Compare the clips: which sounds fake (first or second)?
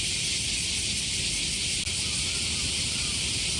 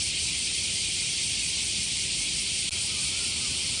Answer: second